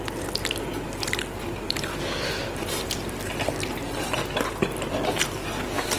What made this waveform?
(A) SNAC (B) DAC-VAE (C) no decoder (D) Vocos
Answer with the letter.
C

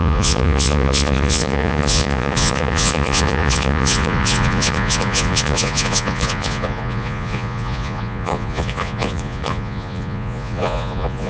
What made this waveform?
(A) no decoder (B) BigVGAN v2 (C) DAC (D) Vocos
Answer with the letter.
D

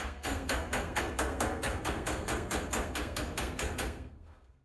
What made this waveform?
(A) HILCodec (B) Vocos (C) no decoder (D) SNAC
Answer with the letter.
D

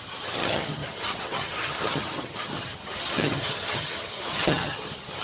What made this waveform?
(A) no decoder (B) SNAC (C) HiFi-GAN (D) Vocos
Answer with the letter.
C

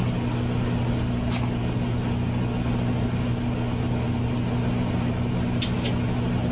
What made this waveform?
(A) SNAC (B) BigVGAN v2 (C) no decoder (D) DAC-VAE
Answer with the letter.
C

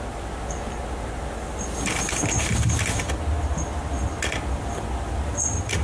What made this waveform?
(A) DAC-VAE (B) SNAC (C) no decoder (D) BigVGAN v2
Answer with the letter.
C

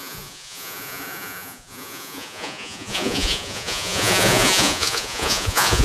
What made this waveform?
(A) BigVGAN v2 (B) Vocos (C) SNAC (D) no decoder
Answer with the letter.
B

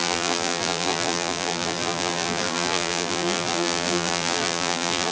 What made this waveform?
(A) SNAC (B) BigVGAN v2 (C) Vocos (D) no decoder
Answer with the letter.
B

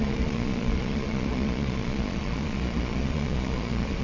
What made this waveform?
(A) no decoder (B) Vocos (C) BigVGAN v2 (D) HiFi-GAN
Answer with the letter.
B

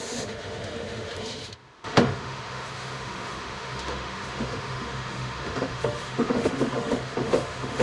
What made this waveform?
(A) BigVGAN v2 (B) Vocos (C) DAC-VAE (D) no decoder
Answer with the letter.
C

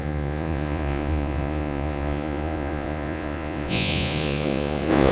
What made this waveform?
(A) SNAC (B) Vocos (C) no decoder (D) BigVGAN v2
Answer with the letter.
B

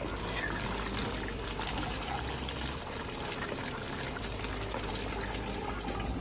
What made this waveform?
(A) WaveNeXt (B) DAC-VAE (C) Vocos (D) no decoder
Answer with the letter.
D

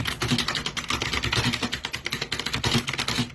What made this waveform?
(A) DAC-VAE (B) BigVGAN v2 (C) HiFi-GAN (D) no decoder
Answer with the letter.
D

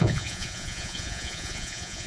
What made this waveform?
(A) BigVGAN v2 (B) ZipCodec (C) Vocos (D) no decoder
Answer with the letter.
C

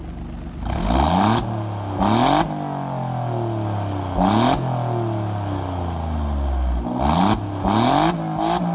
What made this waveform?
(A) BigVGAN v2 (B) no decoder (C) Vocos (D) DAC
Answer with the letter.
B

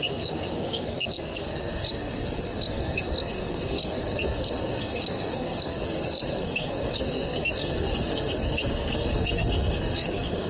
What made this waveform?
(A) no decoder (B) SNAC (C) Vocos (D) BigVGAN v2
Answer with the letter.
B